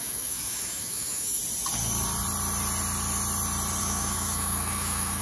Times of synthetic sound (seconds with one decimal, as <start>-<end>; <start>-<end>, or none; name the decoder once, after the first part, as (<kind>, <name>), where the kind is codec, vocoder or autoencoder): 0.0-1.4 (autoencoder, DAC-VAE); 3.8-5.2